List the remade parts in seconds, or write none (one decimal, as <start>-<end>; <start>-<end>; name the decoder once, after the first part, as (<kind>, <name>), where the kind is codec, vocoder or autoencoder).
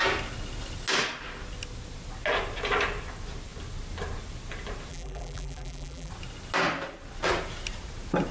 4.9-6.1 (vocoder, BigVGAN v2)